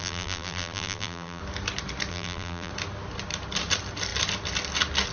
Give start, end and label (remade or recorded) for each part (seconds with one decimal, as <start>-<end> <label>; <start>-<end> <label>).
0.0-1.4 remade; 1.4-2.1 recorded; 2.1-2.7 remade; 2.7-5.1 recorded